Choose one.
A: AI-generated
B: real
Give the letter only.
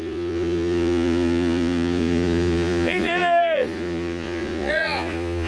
A